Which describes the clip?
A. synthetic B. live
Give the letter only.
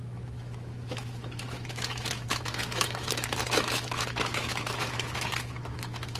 A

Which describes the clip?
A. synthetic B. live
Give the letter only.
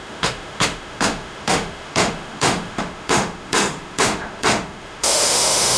A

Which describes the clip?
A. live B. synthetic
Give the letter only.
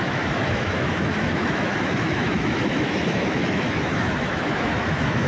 B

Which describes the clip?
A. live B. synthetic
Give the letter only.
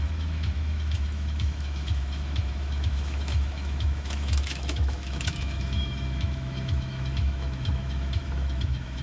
B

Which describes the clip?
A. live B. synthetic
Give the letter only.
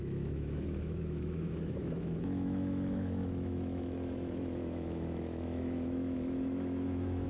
B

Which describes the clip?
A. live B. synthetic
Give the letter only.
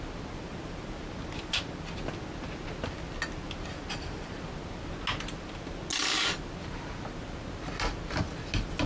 A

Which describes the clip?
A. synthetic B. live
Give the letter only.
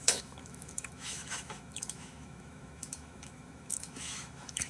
A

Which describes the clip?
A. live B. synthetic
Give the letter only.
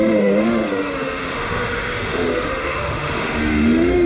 B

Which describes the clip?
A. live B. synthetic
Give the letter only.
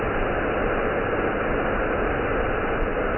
A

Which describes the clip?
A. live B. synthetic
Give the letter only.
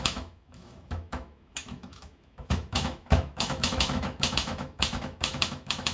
B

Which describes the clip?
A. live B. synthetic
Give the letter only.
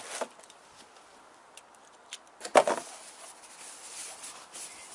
A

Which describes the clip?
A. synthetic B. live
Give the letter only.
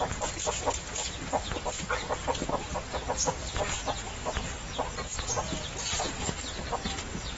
B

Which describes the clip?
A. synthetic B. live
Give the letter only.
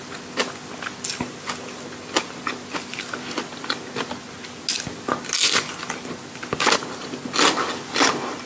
B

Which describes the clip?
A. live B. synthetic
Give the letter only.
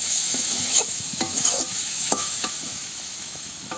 B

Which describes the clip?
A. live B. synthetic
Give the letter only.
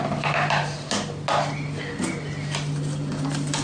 A